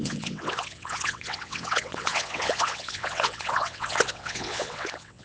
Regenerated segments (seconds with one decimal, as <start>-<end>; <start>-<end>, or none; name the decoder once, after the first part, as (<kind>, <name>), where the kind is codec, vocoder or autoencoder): 0.0-5.2 (vocoder, WaveNeXt)